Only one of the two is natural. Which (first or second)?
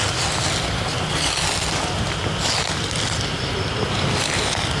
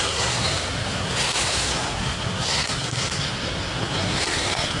first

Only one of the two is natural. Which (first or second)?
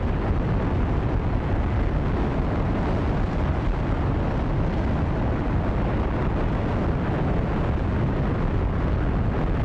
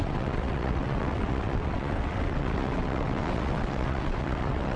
first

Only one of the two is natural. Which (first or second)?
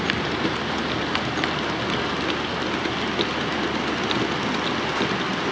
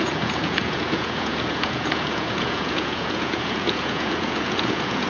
first